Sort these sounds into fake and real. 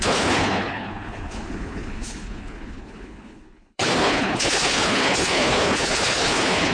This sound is fake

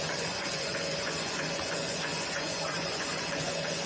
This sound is fake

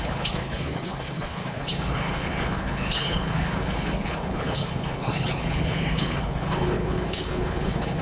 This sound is fake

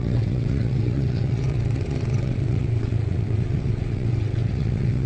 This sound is fake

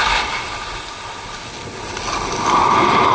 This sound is real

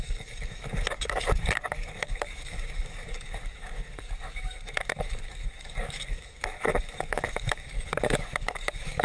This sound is fake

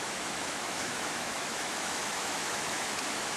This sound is fake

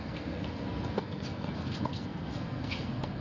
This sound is fake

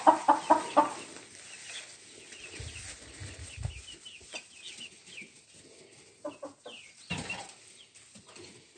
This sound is real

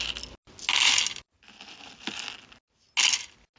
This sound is real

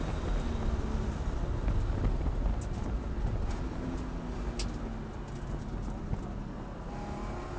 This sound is real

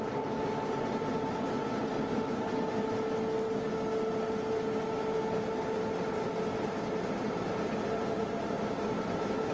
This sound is real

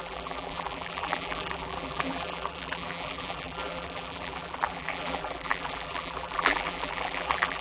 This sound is fake